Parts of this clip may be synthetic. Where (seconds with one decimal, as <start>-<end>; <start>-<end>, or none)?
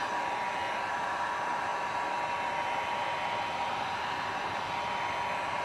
none